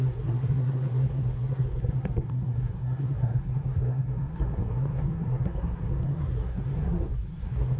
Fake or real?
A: fake